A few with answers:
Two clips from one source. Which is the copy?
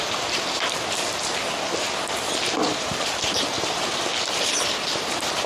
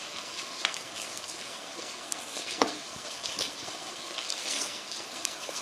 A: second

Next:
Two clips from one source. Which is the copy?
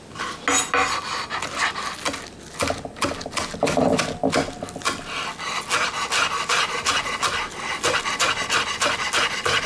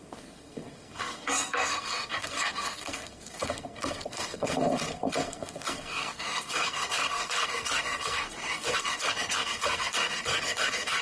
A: second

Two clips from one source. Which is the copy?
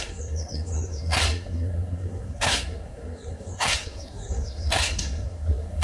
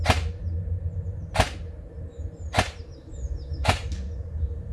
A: first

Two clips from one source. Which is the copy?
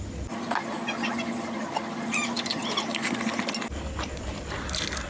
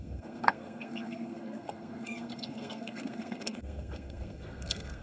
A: second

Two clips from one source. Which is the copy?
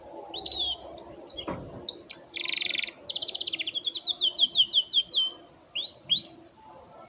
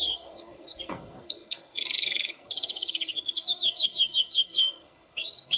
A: second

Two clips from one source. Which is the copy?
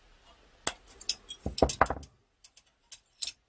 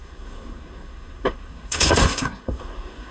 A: second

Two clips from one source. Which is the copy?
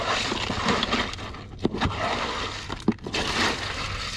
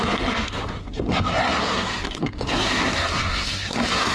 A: second